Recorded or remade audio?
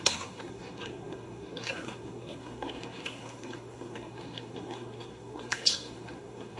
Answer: remade